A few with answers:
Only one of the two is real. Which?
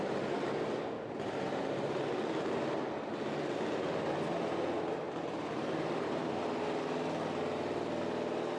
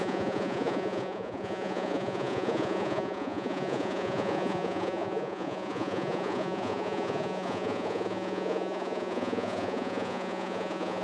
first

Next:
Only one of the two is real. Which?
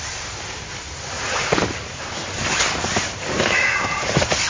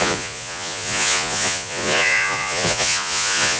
first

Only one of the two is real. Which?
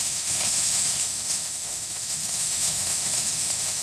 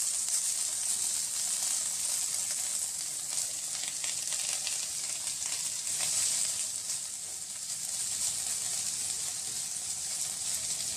second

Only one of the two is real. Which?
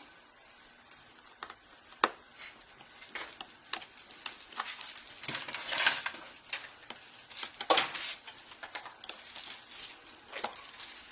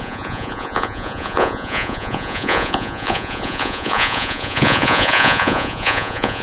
first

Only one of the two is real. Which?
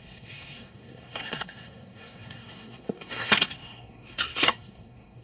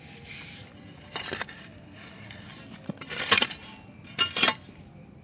second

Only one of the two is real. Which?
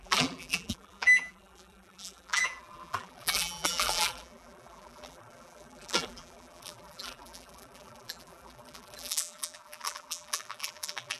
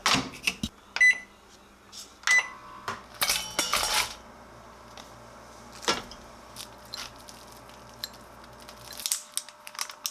second